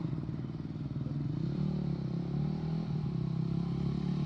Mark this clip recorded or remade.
recorded